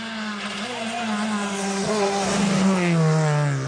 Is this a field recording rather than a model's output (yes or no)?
yes